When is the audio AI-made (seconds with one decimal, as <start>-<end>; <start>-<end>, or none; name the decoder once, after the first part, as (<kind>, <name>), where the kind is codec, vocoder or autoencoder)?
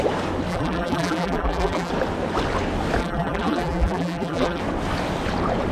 0.5-1.9 (vocoder, BigVGAN v2); 3.0-4.6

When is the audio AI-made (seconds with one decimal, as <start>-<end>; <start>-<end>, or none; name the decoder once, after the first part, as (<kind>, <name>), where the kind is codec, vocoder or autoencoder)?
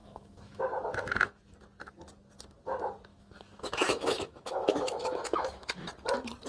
0.0-0.6 (autoencoder, DAC-VAE); 3.1-5.8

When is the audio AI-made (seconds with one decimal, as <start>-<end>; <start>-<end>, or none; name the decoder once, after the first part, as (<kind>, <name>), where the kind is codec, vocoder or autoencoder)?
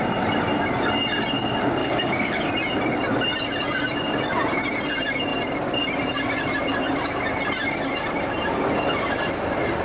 1.8-2.5 (codec, DAC)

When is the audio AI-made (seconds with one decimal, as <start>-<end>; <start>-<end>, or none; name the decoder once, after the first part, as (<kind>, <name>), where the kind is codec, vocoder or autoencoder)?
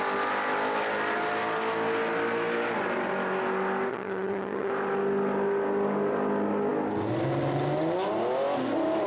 3.9-4.7 (vocoder, HiFi-GAN)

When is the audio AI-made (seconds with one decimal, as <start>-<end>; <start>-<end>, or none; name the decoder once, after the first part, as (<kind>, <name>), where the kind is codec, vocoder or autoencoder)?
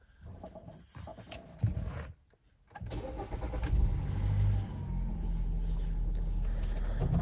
none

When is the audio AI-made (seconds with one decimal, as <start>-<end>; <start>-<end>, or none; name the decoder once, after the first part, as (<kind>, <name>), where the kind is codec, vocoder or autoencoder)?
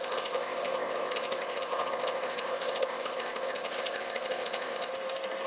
0.0-4.9 (codec, ZipCodec)